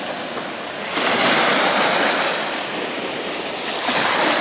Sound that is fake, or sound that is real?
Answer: real